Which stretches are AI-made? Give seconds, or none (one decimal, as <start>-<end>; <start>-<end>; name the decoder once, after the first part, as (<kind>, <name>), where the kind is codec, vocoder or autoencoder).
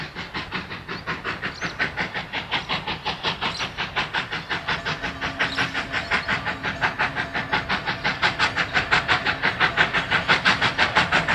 none